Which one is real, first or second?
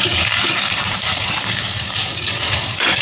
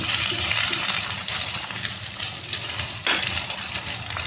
second